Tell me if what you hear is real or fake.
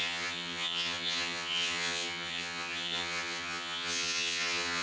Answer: fake